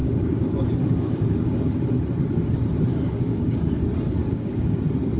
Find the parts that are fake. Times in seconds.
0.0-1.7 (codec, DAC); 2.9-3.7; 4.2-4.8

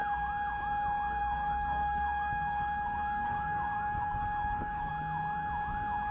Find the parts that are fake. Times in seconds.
1.2-4.9 (codec, DAC)

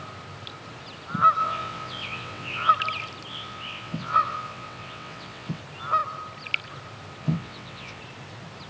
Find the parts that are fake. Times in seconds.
1.4-2.7 (vocoder, WaveNeXt); 3.3-5.6; 7.2-8.0